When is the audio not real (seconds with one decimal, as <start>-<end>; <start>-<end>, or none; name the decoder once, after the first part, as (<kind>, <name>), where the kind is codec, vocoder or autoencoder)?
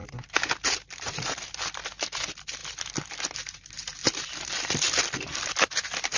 none